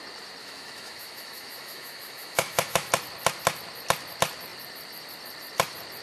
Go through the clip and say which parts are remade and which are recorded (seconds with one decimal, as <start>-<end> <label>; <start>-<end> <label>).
0.0-0.4 recorded; 0.4-2.9 remade; 2.9-6.0 recorded